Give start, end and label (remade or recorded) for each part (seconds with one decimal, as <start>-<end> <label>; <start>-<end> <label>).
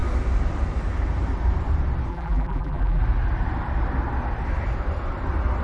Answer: 0.0-2.1 recorded; 2.1-3.0 remade; 3.0-5.6 recorded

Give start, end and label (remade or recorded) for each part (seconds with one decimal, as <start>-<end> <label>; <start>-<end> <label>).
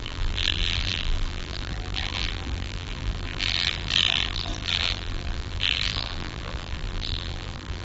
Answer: 0.0-7.8 remade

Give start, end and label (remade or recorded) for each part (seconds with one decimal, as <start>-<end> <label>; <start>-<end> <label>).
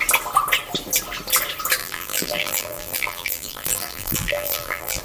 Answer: 0.0-1.8 recorded; 1.8-5.0 remade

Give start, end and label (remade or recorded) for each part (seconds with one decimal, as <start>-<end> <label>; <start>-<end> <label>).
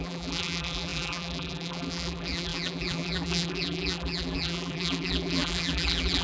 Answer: 0.0-6.2 remade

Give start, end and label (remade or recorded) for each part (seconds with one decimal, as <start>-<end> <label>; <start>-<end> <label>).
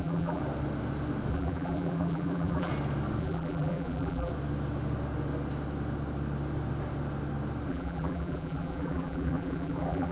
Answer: 0.0-0.4 remade; 0.4-1.3 recorded; 1.3-2.7 remade; 2.7-3.2 recorded; 3.2-4.3 remade; 4.3-7.7 recorded; 7.7-10.1 remade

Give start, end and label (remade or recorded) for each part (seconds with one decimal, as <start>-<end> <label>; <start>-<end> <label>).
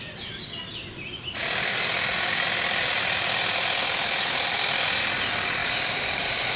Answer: 0.0-5.6 recorded; 5.6-6.6 remade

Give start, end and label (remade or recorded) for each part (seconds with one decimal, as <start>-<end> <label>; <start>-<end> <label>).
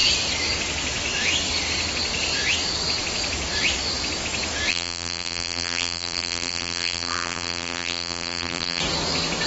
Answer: 0.0-4.7 recorded; 4.7-8.8 remade; 8.8-9.5 recorded